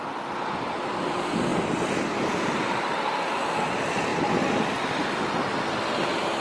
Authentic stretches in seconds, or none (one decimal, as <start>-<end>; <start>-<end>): 0.0-6.4